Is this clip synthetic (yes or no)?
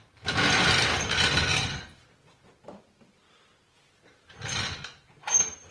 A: yes